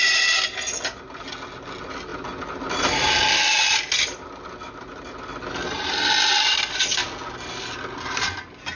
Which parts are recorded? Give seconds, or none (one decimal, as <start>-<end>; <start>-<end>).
0.0-8.8